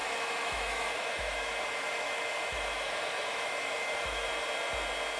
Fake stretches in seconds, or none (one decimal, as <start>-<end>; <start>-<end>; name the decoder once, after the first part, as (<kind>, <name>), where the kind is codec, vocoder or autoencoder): 0.0-4.3 (autoencoder, DAC-VAE)

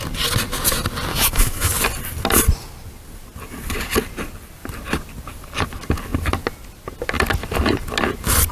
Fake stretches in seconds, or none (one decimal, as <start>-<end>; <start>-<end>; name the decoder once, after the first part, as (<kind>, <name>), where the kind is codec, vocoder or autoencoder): 1.1-1.7 (autoencoder, DAC-VAE)